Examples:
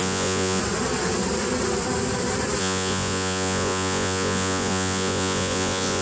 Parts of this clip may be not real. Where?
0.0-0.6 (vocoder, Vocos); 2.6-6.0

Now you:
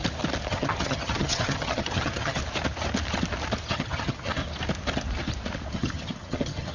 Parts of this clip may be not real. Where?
0.5-2.4 (vocoder, HiFi-GAN); 3.7-4.4; 5.7-6.7

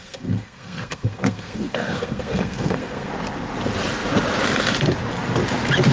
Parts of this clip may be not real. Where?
0.0-3.1 (codec, SNAC)

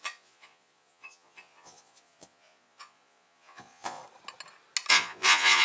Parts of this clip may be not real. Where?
0.0-4.0 (vocoder, Vocos); 4.9-5.6

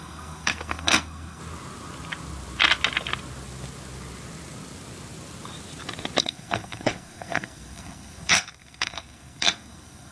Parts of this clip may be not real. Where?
0.0-1.4 (codec, SNAC); 6.2-10.1

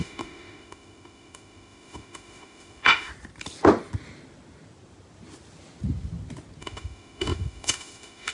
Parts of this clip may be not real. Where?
0.0-3.1 (autoencoder, DAC-VAE); 6.6-8.3

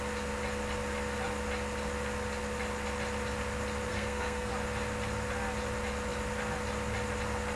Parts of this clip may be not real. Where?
3.9-4.5 (codec, SNAC)

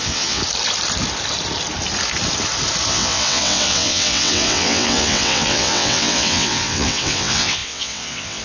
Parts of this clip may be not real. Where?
0.0-0.4 (vocoder, WaveNeXt); 2.9-8.4